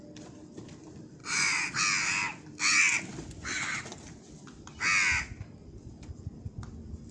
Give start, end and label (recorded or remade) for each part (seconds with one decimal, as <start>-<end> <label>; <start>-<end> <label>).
0.0-1.2 recorded; 1.2-1.8 remade; 1.8-7.1 recorded